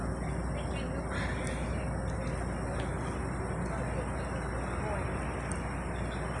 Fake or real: real